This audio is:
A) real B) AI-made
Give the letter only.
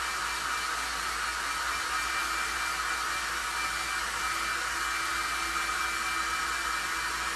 A